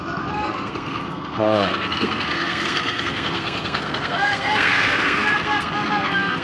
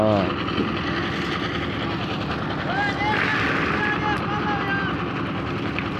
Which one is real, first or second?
second